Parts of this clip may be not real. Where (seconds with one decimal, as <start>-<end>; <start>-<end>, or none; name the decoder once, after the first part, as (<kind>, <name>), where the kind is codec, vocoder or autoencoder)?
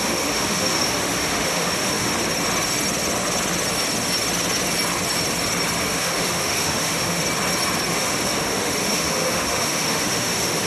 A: 0.0-2.1 (autoencoder, DAC-VAE); 5.8-7.2; 7.9-10.7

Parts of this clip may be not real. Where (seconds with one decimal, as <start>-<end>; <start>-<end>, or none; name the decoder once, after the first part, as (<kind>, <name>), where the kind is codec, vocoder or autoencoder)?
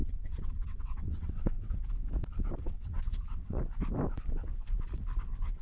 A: 0.0-1.9 (vocoder, WaveNeXt); 2.6-3.6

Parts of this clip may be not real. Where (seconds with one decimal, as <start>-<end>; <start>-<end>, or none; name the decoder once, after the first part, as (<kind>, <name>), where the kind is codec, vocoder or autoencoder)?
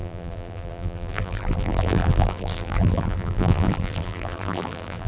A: 0.0-5.1 (vocoder, BigVGAN v2)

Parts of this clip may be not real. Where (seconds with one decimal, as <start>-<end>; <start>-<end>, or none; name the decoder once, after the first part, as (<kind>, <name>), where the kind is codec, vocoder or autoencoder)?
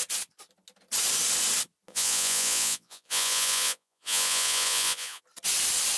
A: 1.9-5.2 (vocoder, Vocos)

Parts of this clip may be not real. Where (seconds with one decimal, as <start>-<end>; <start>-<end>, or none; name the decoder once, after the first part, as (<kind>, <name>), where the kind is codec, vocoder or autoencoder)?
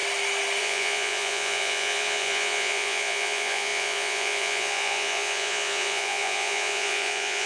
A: 0.6-7.5 (vocoder, Vocos)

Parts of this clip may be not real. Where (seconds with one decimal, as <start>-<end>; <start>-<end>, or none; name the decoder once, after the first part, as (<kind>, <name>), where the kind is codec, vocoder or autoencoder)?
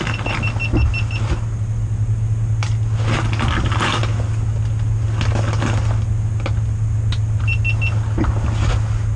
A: none